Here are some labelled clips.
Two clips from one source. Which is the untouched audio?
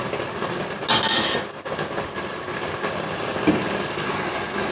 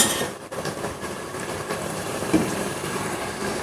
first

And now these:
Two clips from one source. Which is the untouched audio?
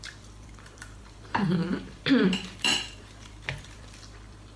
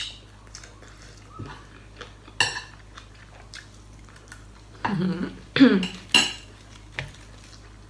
second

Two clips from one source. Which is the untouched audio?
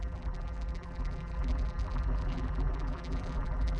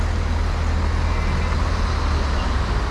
second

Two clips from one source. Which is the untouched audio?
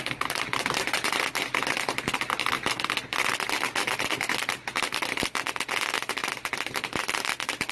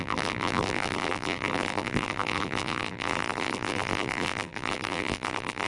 first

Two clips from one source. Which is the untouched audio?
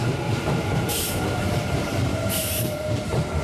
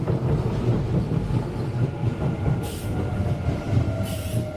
second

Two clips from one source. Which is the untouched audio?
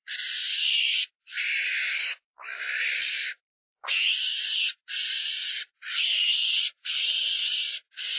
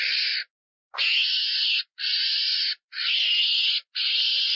second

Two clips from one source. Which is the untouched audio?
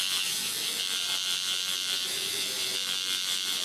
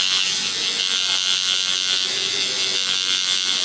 second